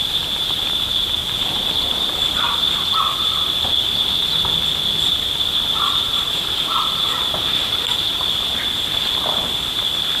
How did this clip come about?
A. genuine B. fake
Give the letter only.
A